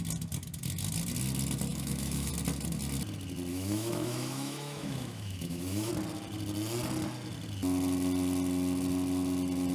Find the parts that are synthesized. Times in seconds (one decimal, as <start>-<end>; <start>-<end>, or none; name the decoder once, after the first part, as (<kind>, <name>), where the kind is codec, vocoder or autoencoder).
1.7-2.3 (autoencoder, DAC-VAE); 3.5-5.9